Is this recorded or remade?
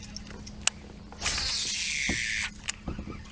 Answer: recorded